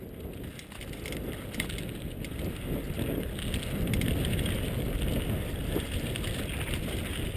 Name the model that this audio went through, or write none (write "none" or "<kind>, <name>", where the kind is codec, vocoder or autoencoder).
none